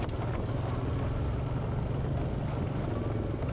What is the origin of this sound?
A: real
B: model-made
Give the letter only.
A